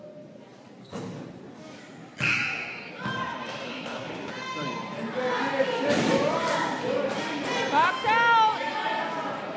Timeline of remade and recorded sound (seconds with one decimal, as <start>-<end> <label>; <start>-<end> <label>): 0.0-3.7 recorded; 3.7-4.3 remade; 4.3-9.6 recorded